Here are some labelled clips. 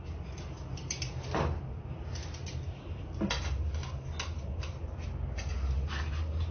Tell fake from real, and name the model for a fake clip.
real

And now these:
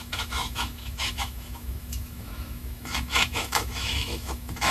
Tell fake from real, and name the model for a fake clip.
fake, autoencoder, DAC-VAE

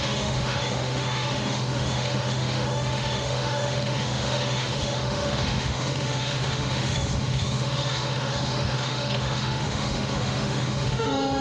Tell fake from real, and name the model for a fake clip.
fake, autoencoder, DAC-VAE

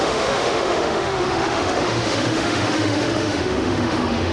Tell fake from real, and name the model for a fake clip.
fake, autoencoder, DAC-VAE